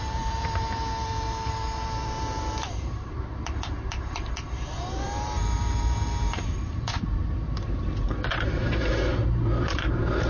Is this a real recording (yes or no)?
no